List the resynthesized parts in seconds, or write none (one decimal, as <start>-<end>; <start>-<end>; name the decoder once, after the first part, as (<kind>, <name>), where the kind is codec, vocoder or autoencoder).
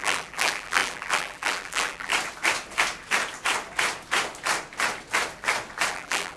0.0-2.1 (vocoder, BigVGAN v2); 5.9-6.4